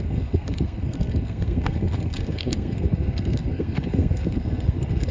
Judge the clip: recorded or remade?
remade